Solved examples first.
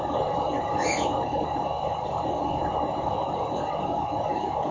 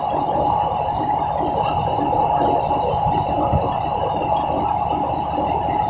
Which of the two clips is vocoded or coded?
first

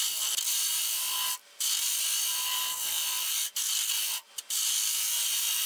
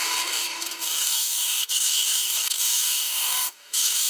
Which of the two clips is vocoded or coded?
second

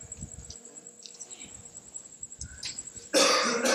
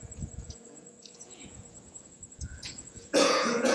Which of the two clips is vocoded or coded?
second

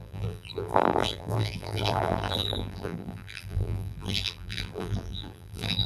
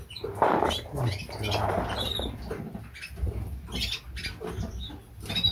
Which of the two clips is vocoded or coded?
first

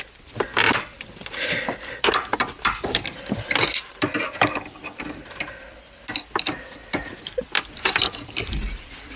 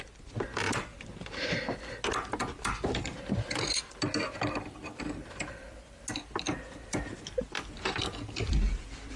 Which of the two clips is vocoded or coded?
first